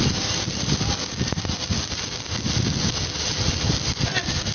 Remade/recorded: recorded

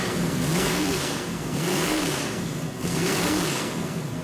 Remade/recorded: remade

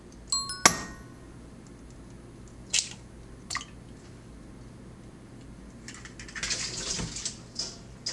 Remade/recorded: recorded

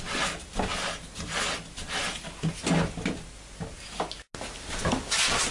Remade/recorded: recorded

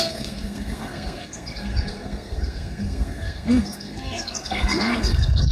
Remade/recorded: remade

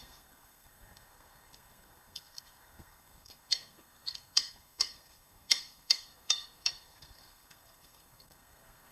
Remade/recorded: remade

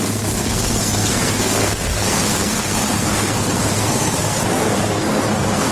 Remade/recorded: remade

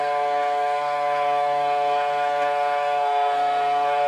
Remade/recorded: remade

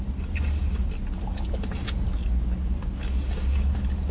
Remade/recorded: recorded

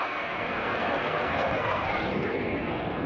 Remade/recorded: remade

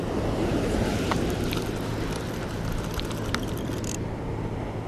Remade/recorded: recorded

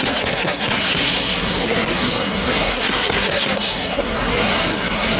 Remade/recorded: remade